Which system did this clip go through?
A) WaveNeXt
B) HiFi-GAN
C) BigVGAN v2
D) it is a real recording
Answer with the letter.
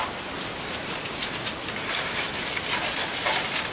D